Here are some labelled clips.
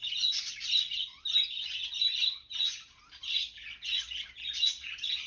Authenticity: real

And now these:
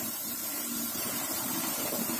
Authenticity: fake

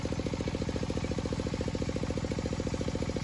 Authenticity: real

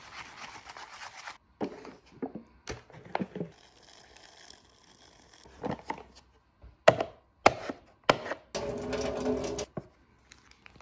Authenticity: real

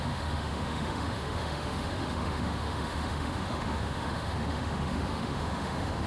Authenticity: fake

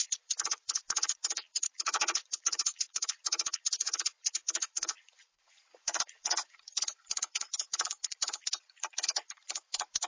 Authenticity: fake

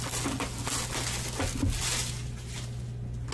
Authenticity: real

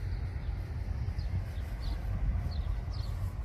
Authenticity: real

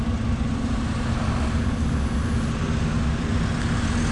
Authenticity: real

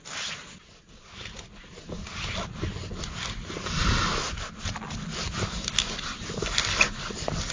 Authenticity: real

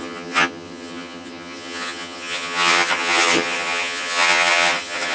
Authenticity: fake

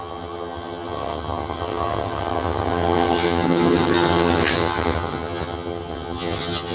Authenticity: fake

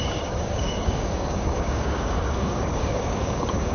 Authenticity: fake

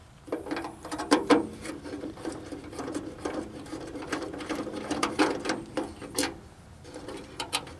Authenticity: fake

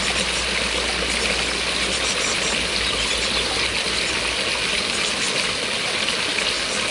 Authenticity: real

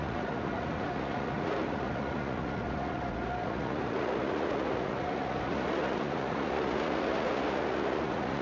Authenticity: fake